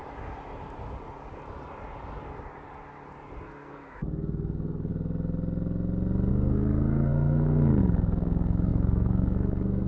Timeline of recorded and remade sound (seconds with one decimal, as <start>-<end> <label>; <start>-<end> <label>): 0.0-3.4 recorded; 3.4-4.9 remade; 4.9-6.3 recorded; 6.3-9.9 remade